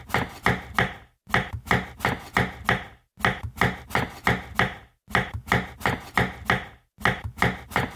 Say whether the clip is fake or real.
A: real